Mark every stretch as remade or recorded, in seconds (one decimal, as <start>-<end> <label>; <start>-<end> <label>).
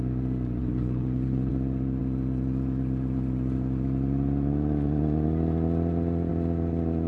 0.0-0.6 recorded; 0.6-1.5 remade; 1.5-7.1 recorded